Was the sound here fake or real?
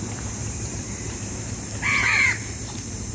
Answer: fake